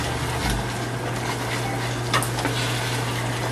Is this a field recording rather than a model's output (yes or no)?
yes